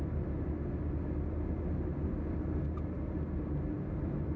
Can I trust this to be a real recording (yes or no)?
yes